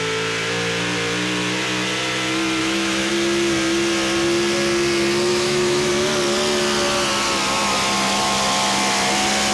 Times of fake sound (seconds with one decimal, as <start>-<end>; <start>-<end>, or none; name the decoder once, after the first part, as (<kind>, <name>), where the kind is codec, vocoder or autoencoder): 2.6-3.1 (autoencoder, DAC-VAE); 5.3-5.9